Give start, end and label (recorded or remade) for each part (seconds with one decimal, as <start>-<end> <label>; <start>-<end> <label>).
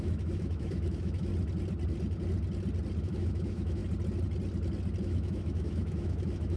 0.0-1.3 remade; 1.3-3.0 recorded; 3.0-3.8 remade; 3.8-5.0 recorded; 5.0-6.6 remade